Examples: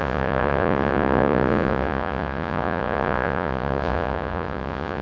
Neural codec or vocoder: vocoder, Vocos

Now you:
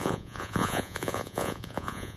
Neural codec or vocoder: vocoder, Vocos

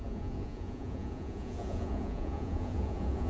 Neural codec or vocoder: vocoder, Vocos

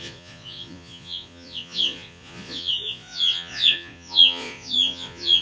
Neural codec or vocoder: vocoder, Vocos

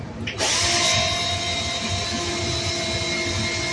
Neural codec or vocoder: none